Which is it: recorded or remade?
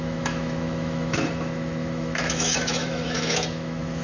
remade